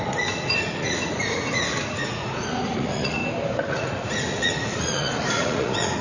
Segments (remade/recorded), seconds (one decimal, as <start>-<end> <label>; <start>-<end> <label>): 0.0-3.2 remade; 3.2-3.7 recorded; 3.7-6.0 remade